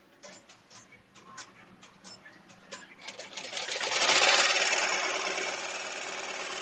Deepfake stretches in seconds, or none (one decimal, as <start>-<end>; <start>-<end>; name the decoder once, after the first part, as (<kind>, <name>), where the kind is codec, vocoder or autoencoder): none